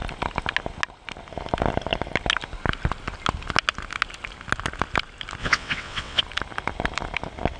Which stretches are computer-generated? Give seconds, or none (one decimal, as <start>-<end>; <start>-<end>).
5.4-6.2